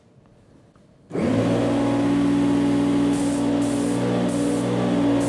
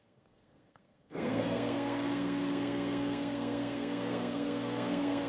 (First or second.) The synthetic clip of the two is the second